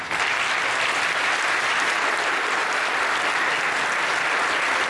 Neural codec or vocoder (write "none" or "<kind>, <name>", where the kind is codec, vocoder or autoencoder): none